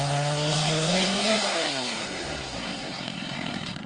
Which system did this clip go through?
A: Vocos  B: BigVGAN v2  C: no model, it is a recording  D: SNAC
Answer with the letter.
D